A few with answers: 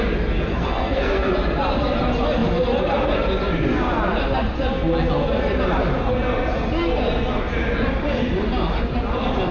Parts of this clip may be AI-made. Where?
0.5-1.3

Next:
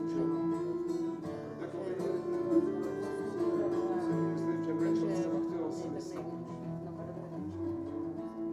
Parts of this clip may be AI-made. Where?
none

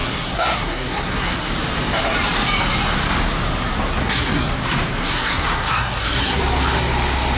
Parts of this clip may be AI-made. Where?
0.0-1.5; 4.0-4.5; 5.0-6.4

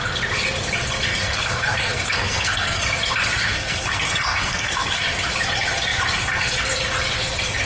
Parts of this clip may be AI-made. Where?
1.1-2.8; 3.5-5.0

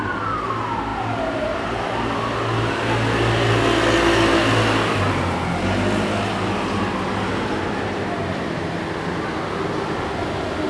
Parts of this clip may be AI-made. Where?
none